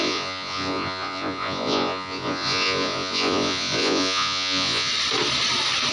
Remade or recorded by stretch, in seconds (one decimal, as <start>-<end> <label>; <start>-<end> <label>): 0.0-4.9 remade; 4.9-5.9 recorded